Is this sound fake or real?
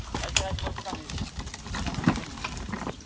fake